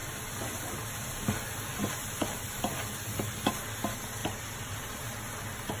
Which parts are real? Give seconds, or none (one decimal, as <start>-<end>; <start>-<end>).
3.5-4.2; 5.1-5.8